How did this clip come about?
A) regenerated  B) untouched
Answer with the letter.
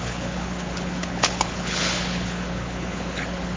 A